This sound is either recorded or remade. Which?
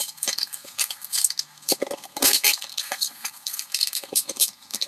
remade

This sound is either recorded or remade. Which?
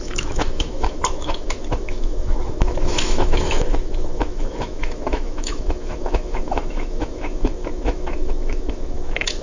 remade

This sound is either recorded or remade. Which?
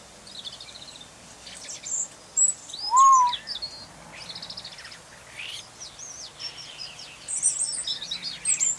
recorded